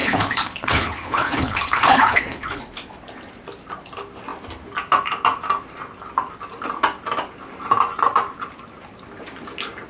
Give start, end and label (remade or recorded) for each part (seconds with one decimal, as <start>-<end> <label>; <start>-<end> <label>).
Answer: 0.0-2.6 remade; 2.6-9.9 recorded